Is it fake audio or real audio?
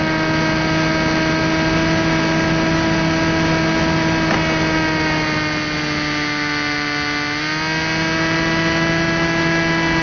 real